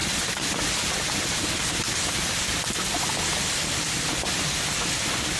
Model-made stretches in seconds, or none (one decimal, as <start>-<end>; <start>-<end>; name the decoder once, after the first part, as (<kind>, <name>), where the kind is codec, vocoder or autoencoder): none